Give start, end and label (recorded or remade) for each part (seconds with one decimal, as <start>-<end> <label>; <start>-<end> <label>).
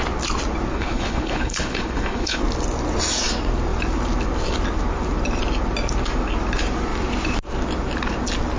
0.0-0.7 recorded; 0.7-2.4 remade; 2.4-8.6 recorded